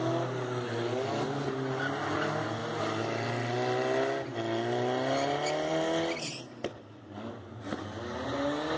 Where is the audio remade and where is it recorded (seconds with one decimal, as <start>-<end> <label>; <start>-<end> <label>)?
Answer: 0.0-8.8 recorded

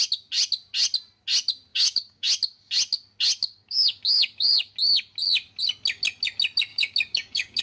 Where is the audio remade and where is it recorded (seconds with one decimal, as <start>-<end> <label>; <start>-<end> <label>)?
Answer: 0.0-1.7 recorded; 1.7-2.3 remade; 2.3-3.4 recorded; 3.4-4.7 remade; 4.7-6.7 recorded; 6.7-7.6 remade

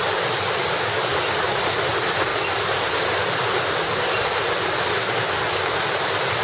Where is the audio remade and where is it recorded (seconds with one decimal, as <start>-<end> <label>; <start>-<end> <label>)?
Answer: 0.0-6.4 recorded

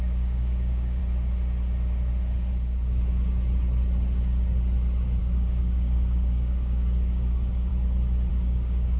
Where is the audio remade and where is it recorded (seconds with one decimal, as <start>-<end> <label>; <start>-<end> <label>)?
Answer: 0.0-1.0 remade; 1.0-5.2 recorded; 5.2-7.7 remade; 7.7-8.3 recorded; 8.3-9.0 remade

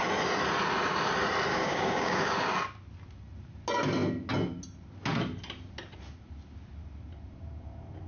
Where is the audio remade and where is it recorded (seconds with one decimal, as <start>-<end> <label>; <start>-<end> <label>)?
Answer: 0.0-1.5 recorded; 1.5-2.3 remade; 2.3-8.1 recorded

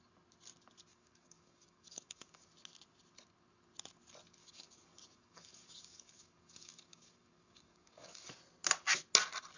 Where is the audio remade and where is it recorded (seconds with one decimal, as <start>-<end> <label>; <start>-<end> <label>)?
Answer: 0.0-0.9 recorded; 0.9-2.5 remade; 2.5-4.4 recorded; 4.4-8.3 remade; 8.3-9.6 recorded